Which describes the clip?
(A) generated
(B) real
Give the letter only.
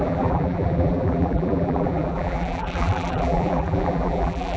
A